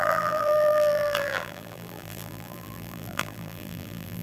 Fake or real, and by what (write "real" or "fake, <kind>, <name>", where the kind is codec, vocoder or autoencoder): fake, vocoder, BigVGAN v2